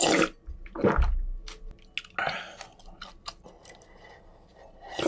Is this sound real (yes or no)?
yes